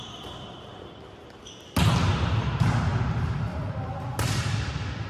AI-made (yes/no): no